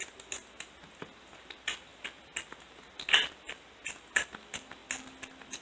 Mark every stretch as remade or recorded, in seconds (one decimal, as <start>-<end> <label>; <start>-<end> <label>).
0.0-5.6 recorded